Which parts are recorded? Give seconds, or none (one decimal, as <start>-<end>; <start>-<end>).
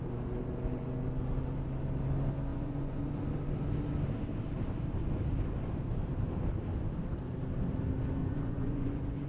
0.0-2.5; 3.0-8.2